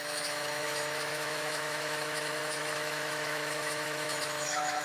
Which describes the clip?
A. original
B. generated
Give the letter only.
B